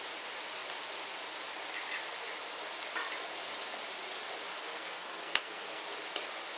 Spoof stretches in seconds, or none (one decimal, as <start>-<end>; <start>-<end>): 4.5-5.8